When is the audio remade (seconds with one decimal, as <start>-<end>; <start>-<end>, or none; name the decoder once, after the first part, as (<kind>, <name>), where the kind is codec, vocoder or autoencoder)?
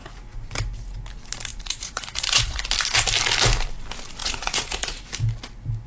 1.5-2.6 (vocoder, Vocos); 4.2-5.0